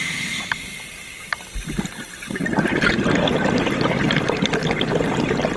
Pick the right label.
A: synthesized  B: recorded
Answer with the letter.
B